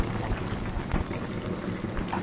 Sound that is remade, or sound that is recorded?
recorded